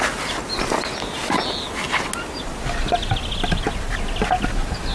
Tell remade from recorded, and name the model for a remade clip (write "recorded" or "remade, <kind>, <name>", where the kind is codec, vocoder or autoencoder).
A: recorded